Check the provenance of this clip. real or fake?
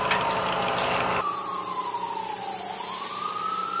real